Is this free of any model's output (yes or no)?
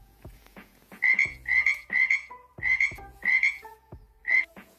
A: no